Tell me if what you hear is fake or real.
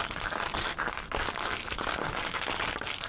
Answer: real